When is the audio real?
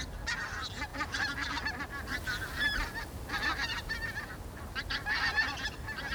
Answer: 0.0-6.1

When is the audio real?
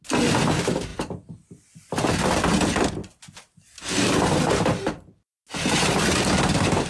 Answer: 0.0-6.9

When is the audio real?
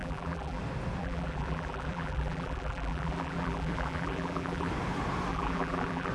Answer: 0.6-1.0; 4.7-5.3